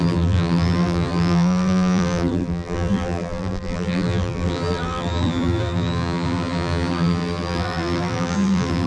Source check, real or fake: fake